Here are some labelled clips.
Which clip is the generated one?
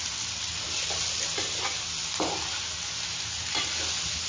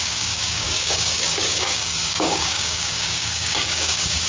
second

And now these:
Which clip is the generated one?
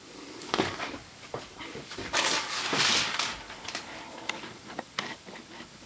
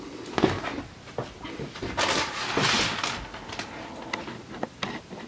first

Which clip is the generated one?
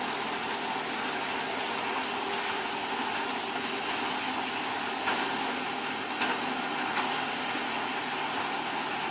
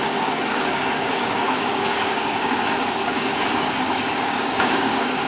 second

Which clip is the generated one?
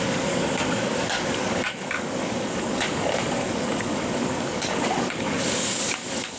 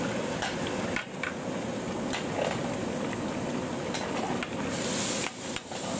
first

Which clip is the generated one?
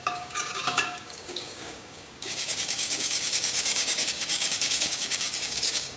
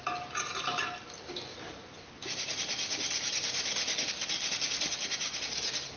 first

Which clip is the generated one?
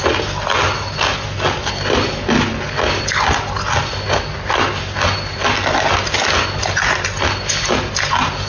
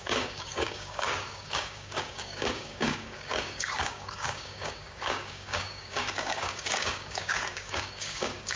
second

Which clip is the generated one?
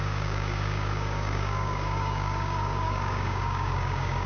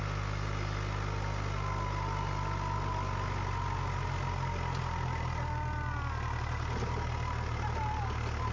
first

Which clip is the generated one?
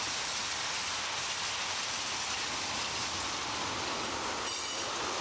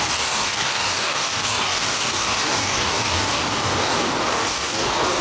second